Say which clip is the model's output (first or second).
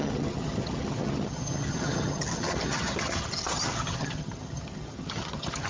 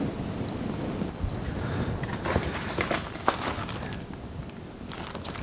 first